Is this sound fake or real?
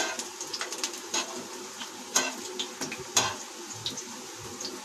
real